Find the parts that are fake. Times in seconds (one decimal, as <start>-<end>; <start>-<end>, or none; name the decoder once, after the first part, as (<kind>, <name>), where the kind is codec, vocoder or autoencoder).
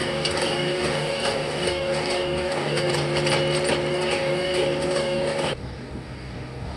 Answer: 0.0-2.9 (codec, DAC); 3.9-6.8